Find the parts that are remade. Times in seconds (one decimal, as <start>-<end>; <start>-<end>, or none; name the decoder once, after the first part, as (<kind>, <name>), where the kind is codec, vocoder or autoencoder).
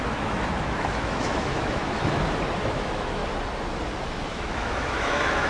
0.0-2.2 (autoencoder, DAC-VAE); 2.7-3.2; 4.1-5.5